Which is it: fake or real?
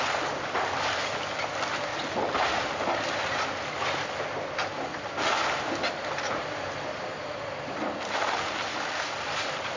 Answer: real